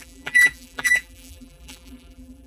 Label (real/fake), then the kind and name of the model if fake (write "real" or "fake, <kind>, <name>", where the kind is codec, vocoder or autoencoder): fake, vocoder, BigVGAN v2